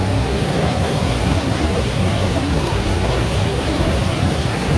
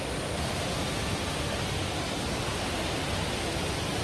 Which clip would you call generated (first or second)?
first